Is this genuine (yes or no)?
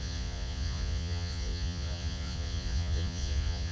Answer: no